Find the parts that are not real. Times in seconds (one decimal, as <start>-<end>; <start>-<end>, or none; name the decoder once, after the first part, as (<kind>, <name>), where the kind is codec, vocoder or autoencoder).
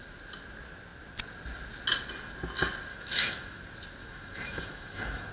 2.9-3.6 (autoencoder, DAC-VAE); 4.0-5.3